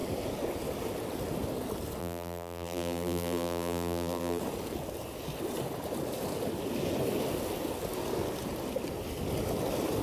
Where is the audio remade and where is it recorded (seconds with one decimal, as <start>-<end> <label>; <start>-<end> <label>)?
0.0-2.0 recorded; 2.0-4.4 remade; 4.4-10.0 recorded